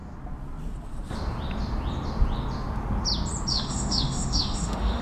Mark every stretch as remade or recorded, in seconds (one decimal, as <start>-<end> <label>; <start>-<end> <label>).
0.0-3.5 recorded; 3.5-5.0 remade